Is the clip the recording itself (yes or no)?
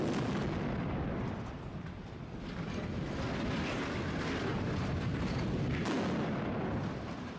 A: yes